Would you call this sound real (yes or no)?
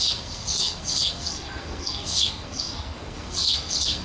no